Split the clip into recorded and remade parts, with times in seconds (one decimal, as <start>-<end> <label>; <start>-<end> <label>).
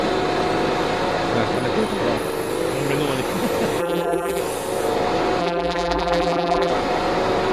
0.0-3.8 recorded; 3.8-4.4 remade; 4.4-5.4 recorded; 5.4-6.7 remade; 6.7-7.5 recorded